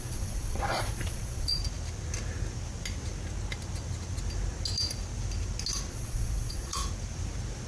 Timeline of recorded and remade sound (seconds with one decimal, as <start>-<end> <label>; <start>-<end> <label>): 0.0-1.6 remade; 1.6-5.9 recorded; 5.9-6.8 remade; 6.8-7.7 recorded